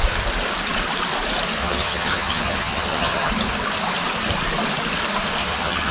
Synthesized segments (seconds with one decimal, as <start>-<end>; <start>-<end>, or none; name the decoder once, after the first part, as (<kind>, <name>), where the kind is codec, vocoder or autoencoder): 1.6-3.3 (vocoder, HiFi-GAN); 5.4-5.9